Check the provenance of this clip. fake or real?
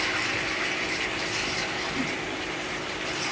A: real